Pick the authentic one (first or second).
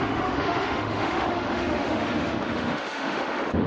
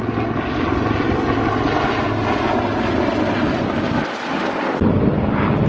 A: second